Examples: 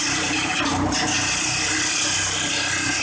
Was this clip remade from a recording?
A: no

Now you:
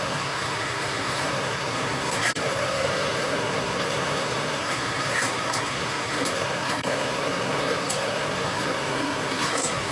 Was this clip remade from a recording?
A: yes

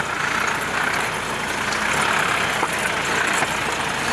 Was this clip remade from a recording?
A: no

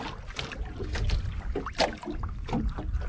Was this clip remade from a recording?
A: no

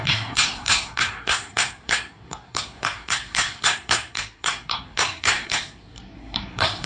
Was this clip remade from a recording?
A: yes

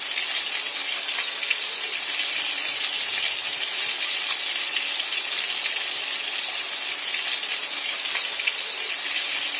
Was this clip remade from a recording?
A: no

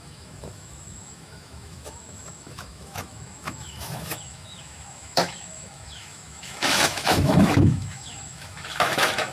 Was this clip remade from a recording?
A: yes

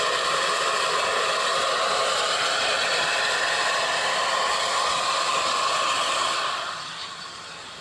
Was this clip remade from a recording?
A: no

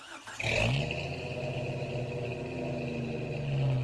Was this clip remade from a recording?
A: no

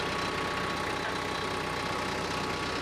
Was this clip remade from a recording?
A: no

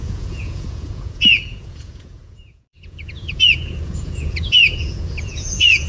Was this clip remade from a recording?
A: yes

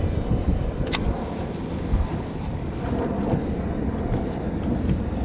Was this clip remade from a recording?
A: no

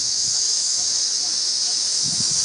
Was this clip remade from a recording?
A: yes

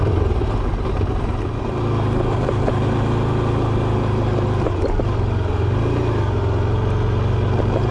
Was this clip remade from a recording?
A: no